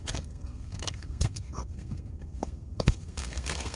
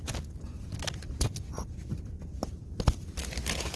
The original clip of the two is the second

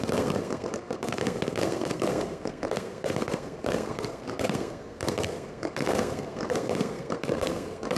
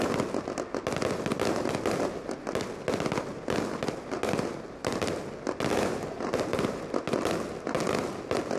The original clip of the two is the second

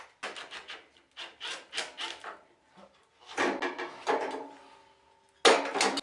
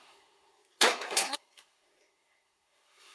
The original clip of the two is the first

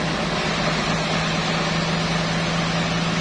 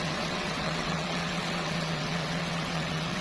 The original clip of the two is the first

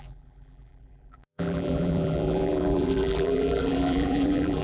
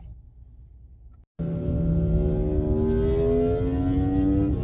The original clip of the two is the second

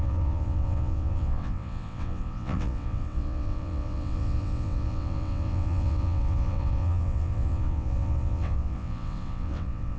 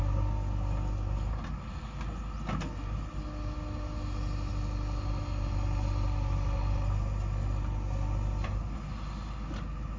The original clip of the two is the second